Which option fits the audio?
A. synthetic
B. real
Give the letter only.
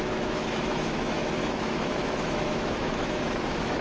A